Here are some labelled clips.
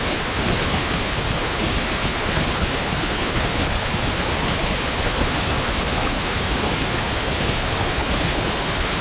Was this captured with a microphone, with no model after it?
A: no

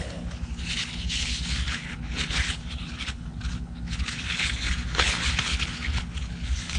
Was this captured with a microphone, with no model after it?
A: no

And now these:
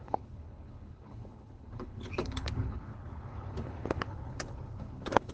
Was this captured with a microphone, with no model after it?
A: no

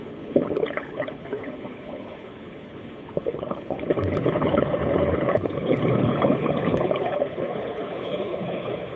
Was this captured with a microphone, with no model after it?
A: no